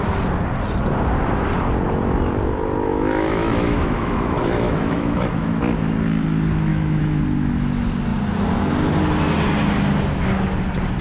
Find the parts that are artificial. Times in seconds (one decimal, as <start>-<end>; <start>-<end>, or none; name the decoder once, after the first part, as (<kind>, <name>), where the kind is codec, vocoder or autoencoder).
2.9-5.6 (autoencoder, DAC-VAE); 6.7-7.2

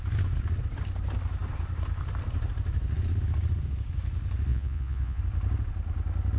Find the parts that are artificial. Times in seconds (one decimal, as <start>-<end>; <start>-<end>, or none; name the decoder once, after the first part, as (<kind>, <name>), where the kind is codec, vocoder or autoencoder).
4.5-5.2 (vocoder, Vocos)